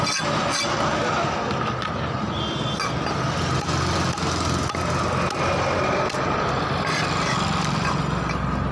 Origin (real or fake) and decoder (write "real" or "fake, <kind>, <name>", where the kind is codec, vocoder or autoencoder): real